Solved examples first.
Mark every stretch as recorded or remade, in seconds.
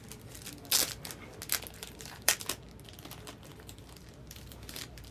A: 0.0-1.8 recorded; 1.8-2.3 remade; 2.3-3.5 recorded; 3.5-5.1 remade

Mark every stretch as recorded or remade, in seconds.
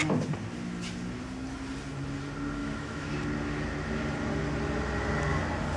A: 0.0-2.6 recorded; 2.6-3.1 remade; 3.1-5.8 recorded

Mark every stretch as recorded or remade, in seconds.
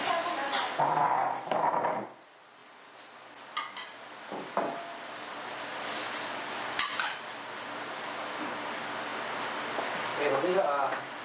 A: 0.0-11.2 recorded